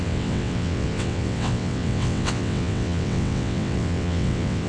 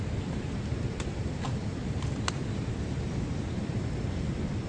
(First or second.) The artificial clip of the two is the first